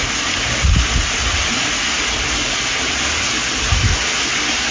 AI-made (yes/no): no